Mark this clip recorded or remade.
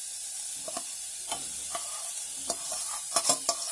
recorded